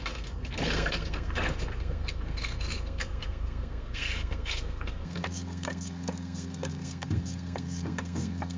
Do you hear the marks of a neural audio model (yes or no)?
yes